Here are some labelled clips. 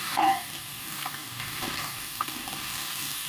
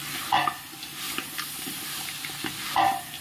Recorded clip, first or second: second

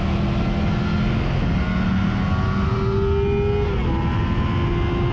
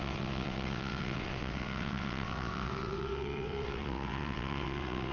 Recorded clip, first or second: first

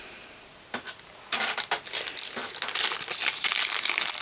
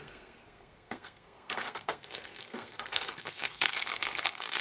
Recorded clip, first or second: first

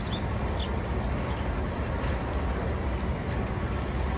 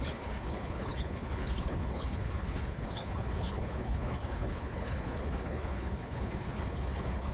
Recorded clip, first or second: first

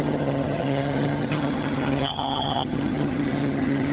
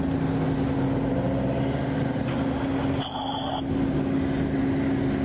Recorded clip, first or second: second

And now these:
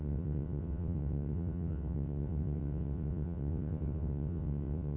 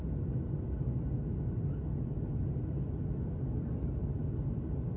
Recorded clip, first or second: second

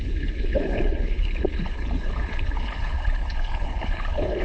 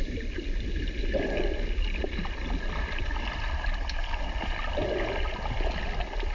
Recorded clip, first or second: second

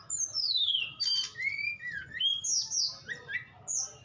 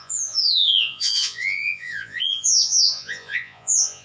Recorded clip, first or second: first